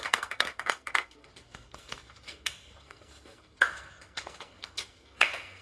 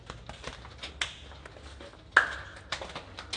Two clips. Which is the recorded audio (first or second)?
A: second